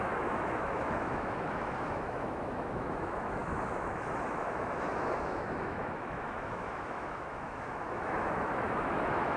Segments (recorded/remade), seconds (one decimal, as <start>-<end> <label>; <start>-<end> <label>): 0.0-9.4 remade